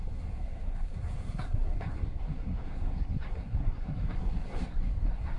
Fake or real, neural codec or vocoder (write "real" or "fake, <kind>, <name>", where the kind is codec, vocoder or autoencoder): fake, codec, SNAC